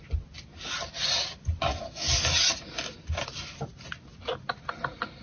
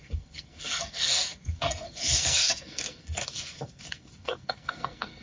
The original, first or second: first